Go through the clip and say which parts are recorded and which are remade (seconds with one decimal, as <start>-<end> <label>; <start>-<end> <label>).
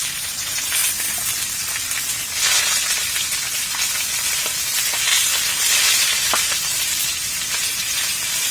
0.0-0.8 remade; 0.8-4.2 recorded; 4.2-5.1 remade; 5.1-5.9 recorded; 5.9-8.5 remade